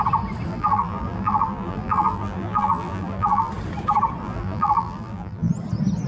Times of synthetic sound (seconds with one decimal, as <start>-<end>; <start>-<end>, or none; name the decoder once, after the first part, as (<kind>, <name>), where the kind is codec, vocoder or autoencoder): 0.5-3.5 (vocoder, BigVGAN v2); 4.2-5.5